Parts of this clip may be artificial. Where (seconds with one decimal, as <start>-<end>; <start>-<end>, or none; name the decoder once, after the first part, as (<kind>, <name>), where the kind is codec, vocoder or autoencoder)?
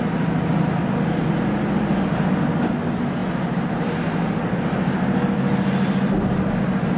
3.2-3.9 (vocoder, BigVGAN v2)